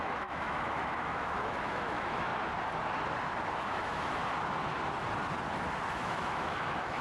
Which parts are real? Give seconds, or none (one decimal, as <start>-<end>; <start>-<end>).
2.3-3.6; 4.2-5.9

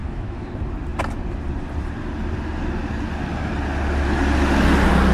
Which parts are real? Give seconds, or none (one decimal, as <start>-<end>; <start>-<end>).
0.5-5.1

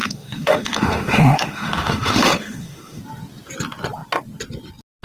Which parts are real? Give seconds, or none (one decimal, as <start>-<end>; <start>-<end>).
3.0-5.0

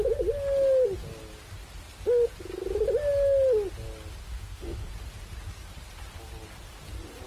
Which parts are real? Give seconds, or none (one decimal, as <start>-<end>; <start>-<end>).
0.0-4.2; 4.9-7.3

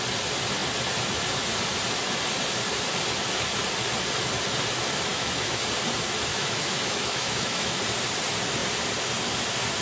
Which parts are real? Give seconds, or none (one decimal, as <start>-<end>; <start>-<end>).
0.0-5.1; 5.6-6.3; 7.8-9.8

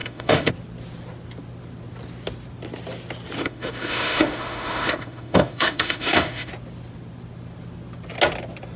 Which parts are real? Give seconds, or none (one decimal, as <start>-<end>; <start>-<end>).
0.5-3.4; 6.5-8.8

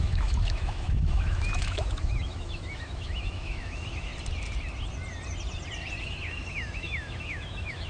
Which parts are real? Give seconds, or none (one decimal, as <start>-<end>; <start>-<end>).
4.1-6.0

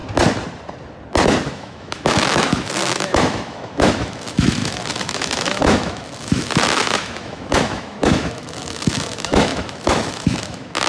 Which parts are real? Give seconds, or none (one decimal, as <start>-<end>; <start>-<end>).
0.0-1.5